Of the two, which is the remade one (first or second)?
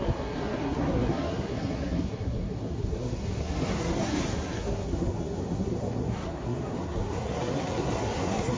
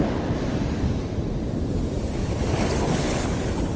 first